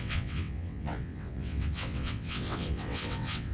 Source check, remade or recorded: remade